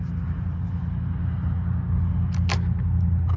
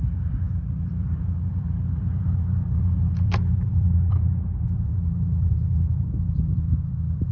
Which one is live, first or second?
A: first